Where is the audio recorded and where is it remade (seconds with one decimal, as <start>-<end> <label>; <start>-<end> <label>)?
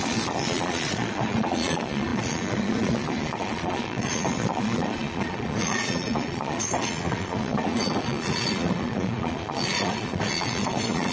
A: 0.0-11.1 remade